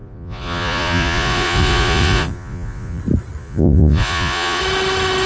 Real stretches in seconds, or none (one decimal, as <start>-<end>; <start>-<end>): 3.0-3.4; 4.6-5.3